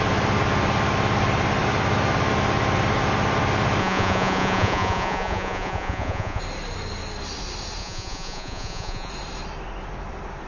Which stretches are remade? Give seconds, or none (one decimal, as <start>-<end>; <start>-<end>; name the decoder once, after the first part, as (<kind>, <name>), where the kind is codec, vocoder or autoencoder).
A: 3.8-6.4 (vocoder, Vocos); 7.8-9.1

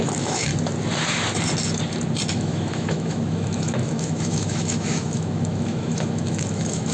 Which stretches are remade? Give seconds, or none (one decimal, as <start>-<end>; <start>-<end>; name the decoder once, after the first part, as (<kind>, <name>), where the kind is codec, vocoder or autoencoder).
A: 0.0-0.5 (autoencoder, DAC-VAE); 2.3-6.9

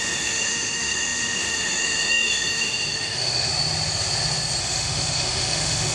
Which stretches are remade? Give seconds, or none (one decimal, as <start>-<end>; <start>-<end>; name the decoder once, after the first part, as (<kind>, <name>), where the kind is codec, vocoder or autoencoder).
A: 0.0-3.5 (autoencoder, DAC-VAE); 4.6-5.9